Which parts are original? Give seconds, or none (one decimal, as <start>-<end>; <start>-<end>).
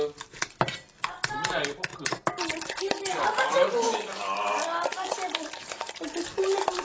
0.0-6.8